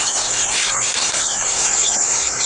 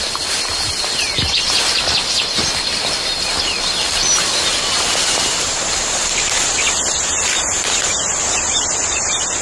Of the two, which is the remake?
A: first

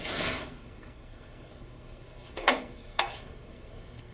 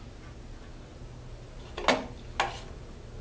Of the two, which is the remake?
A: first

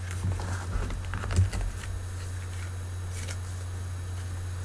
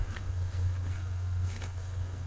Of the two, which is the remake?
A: second